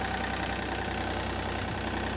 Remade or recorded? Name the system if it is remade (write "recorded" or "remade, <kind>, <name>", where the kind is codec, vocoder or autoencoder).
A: recorded